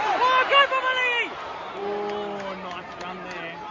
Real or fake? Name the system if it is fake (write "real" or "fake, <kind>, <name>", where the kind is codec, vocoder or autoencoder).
real